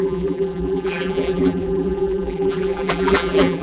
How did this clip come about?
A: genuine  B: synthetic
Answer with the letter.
B